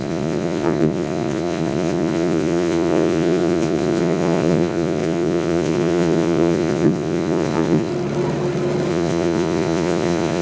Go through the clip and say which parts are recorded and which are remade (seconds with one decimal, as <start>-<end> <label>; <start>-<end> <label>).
0.0-7.9 remade; 7.9-8.9 recorded; 8.9-10.4 remade